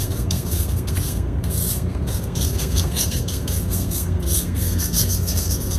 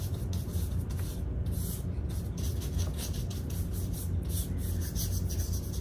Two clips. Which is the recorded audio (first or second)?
second